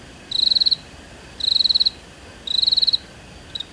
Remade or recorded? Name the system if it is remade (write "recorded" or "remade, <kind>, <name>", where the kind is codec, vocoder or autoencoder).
recorded